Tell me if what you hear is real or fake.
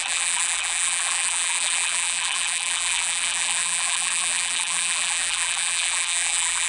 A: fake